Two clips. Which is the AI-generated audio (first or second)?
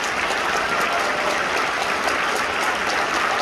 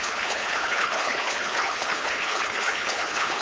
second